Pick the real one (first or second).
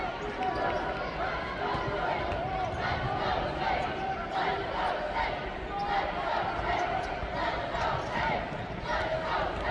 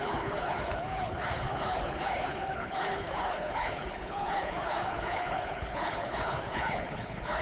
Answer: first